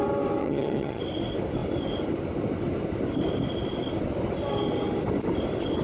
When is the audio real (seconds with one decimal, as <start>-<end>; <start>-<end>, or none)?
0.0-0.4; 1.0-5.8